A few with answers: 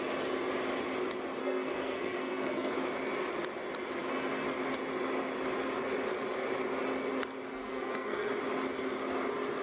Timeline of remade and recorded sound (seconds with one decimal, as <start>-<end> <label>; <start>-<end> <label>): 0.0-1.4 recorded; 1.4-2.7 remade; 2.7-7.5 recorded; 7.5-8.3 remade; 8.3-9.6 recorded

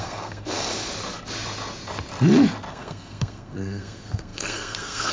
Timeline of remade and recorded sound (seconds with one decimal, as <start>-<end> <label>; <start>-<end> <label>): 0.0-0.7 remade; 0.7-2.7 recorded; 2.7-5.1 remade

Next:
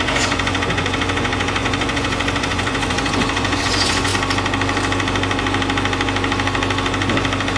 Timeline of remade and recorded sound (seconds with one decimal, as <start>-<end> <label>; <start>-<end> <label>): 0.0-4.1 remade; 4.1-7.6 recorded

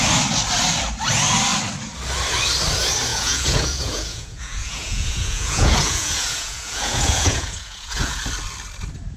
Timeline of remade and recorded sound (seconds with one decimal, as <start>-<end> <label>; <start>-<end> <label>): 0.0-3.1 recorded; 3.1-8.2 remade; 8.2-9.2 recorded

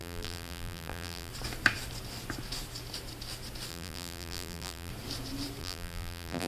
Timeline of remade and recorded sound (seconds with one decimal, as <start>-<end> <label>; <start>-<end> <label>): 0.0-1.3 remade; 1.3-3.7 recorded; 3.7-4.9 remade; 4.9-5.6 recorded; 5.6-6.5 remade

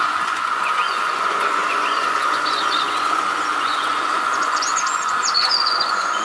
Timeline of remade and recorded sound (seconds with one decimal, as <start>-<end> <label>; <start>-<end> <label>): 0.0-6.2 remade

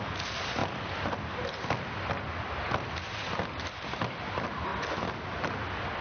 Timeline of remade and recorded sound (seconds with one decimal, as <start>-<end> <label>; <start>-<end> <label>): 0.0-6.0 recorded

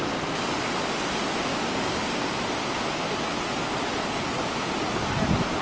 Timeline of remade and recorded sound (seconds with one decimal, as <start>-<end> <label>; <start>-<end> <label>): 0.0-1.5 recorded; 1.5-2.4 remade; 2.4-5.6 recorded